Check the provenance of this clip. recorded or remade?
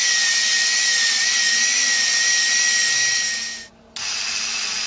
recorded